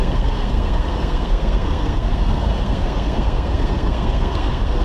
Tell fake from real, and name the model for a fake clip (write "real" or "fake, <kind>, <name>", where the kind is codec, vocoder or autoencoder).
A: fake, codec, SNAC